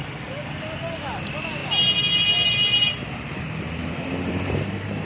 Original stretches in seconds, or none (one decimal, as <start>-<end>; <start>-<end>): 0.0-5.0